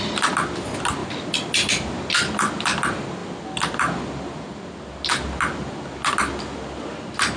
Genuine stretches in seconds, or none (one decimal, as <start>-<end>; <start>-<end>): 0.0-7.4